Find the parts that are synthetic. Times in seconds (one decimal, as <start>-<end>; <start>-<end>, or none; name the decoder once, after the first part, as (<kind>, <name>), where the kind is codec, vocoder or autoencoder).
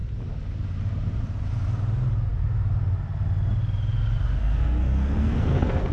4.4-5.9 (codec, SNAC)